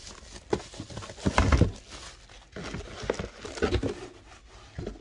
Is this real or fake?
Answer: real